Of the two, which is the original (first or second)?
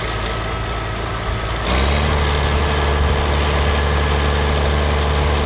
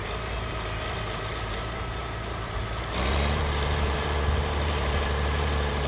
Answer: first